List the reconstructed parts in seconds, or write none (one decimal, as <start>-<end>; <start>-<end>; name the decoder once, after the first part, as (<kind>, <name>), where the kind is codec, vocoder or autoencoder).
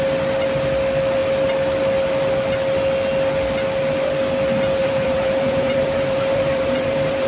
4.8-7.3 (vocoder, BigVGAN v2)